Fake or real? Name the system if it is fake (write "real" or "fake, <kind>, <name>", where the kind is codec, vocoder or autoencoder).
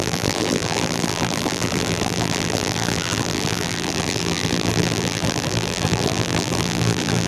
fake, vocoder, BigVGAN v2